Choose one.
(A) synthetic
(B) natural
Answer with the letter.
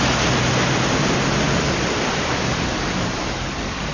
B